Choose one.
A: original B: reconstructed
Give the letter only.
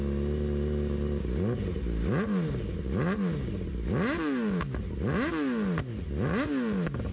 A